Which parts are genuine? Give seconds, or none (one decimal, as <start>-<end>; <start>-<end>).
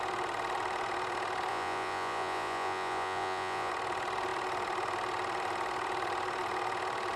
0.0-1.5; 3.7-7.2